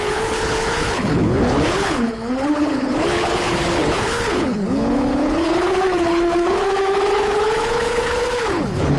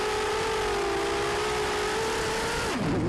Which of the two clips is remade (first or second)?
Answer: first